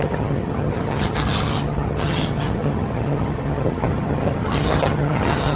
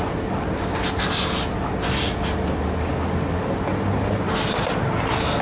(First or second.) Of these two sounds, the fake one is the first